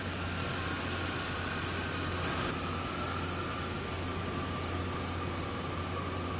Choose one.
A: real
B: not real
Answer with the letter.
A